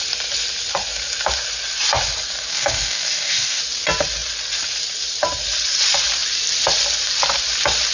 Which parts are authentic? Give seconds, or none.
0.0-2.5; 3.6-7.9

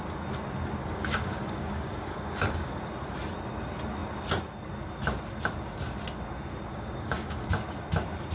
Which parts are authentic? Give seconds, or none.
0.0-0.8; 2.8-6.7; 7.5-8.3

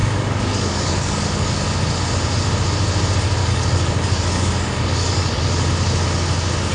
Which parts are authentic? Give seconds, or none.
1.6-3.4; 5.4-6.7

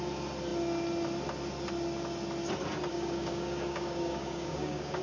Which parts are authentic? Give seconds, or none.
0.0-2.9

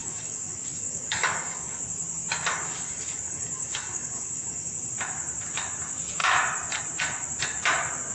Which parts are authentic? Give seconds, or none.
1.8-2.5; 4.7-8.1

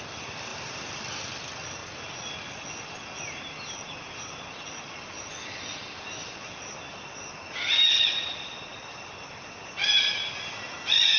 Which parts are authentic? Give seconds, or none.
0.0-11.2

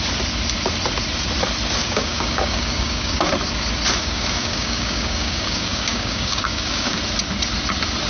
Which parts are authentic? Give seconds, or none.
0.0-1.8; 3.3-4.0; 7.0-8.1